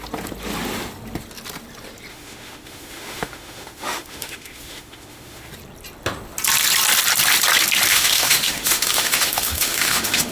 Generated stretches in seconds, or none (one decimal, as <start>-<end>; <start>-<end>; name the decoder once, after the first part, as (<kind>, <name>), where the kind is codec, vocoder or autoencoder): 2.1-5.5 (autoencoder, DAC-VAE); 7.9-10.3